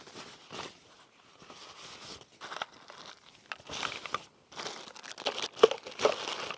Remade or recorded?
recorded